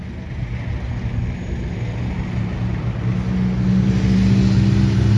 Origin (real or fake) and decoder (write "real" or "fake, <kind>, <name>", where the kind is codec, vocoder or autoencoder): real